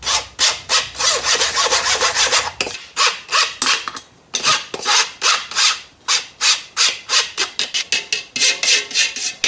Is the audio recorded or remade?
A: recorded